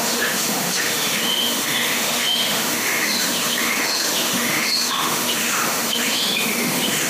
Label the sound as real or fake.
fake